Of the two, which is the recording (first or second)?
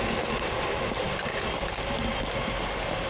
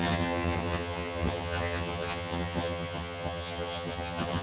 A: first